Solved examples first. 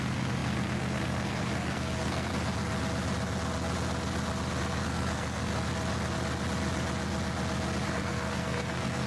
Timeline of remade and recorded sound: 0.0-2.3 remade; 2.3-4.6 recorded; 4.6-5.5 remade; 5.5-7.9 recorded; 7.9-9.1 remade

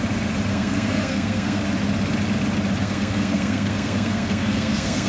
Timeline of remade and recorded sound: 0.0-0.5 recorded; 0.5-1.6 remade; 1.6-2.8 recorded; 2.8-5.1 remade

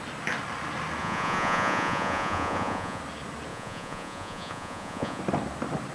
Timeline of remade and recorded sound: 0.0-1.0 recorded; 1.0-3.0 remade; 3.0-3.5 recorded; 3.5-5.2 remade; 5.2-5.9 recorded

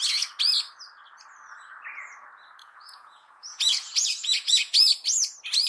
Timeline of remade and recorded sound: 0.0-2.6 recorded; 2.6-4.9 remade; 4.9-5.7 recorded